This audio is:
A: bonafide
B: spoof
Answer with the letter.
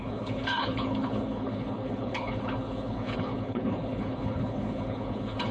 B